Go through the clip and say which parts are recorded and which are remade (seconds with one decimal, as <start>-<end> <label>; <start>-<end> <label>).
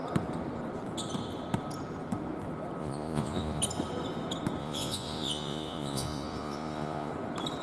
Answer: 0.0-2.8 recorded; 2.8-3.6 remade; 3.6-4.6 recorded; 4.6-7.1 remade; 7.1-7.6 recorded